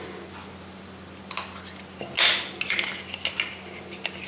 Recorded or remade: recorded